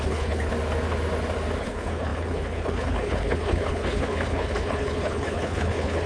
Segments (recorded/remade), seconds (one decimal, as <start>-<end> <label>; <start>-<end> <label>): 0.0-0.5 remade; 0.5-1.6 recorded; 1.6-6.1 remade